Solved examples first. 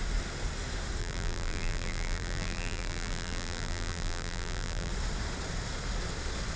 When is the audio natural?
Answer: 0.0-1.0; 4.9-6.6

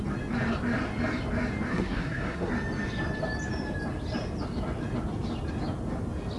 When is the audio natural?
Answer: 0.0-1.7; 2.5-6.4